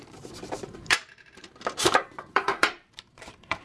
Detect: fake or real fake